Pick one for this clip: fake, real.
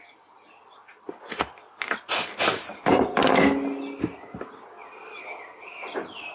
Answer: real